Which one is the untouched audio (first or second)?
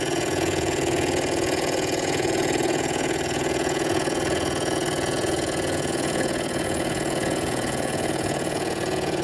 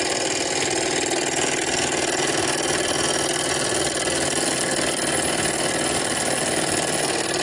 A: second